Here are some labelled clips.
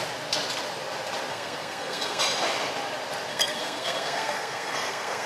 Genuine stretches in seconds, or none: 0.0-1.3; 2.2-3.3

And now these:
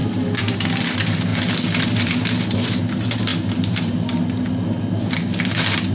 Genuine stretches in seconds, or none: 0.0-5.9

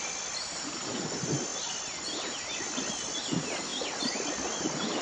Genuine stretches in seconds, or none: 0.0-5.0

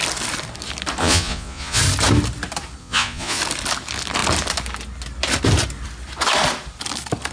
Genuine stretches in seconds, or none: 0.0-1.0; 1.8-2.8; 3.4-7.3

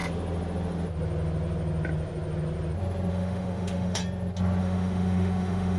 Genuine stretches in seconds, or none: 0.0-3.1; 4.0-4.6

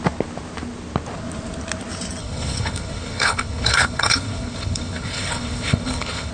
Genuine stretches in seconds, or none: 0.0-2.2

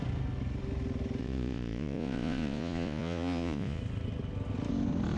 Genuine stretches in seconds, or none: 0.0-1.2; 3.8-5.2